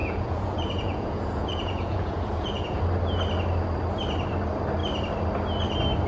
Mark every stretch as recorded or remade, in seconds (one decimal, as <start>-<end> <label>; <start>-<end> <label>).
0.0-2.8 remade; 2.8-6.1 recorded